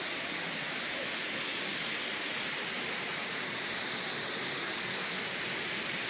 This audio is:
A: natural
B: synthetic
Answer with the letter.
A